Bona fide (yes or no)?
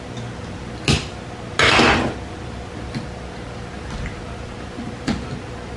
yes